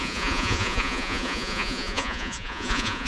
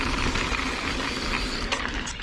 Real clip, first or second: second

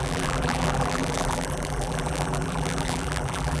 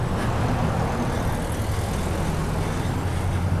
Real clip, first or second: second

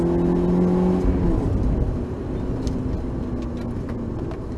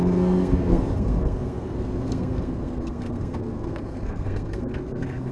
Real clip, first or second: first